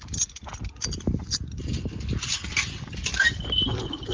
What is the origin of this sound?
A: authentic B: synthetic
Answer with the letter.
A